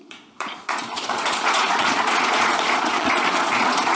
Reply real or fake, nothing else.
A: fake